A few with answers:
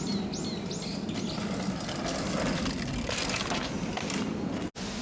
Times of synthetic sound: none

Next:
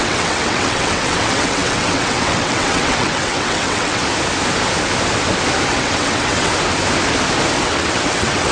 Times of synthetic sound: 0.0-4.0 (vocoder, WaveNeXt); 5.7-6.5; 7.6-8.5